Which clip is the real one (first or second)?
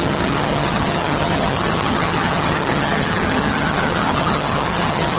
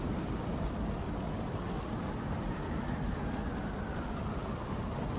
second